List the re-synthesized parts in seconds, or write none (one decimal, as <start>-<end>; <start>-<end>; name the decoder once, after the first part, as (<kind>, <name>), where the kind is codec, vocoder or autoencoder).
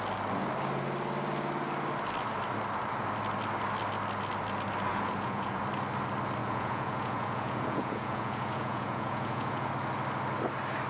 4.9-5.6 (vocoder, Vocos); 6.4-9.7